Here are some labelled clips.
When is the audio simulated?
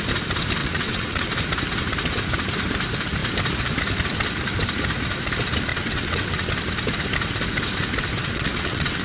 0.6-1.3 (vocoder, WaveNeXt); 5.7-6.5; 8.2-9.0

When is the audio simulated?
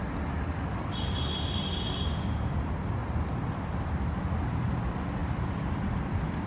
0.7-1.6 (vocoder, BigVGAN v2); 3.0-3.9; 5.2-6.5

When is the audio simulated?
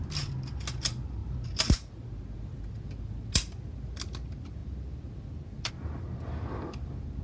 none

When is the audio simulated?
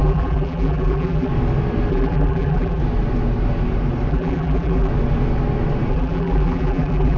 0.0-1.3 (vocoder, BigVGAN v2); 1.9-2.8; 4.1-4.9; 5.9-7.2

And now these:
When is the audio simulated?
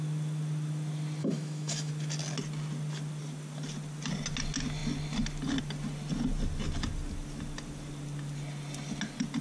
1.2-1.9 (autoencoder, DAC-VAE)